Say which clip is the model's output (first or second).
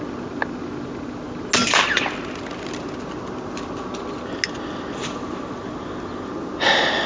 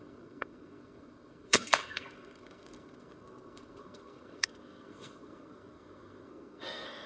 second